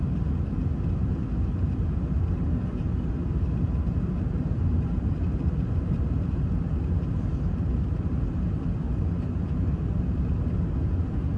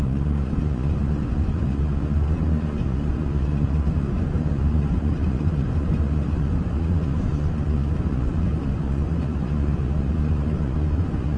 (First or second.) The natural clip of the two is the first